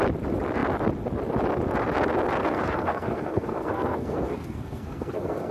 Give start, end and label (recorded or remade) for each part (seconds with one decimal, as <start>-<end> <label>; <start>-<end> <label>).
0.0-2.4 recorded; 2.4-5.5 remade